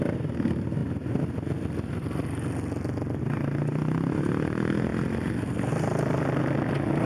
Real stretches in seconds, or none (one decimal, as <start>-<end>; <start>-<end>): 0.0-7.1